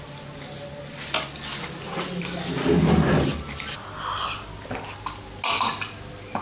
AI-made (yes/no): no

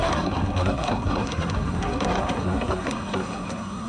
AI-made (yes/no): yes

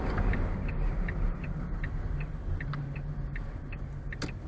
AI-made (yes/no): no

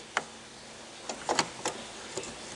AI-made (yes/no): no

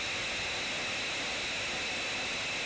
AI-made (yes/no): no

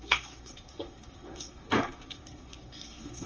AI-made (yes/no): yes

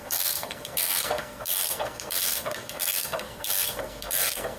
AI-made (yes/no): yes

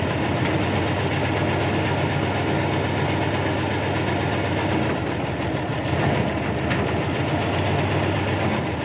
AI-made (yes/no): no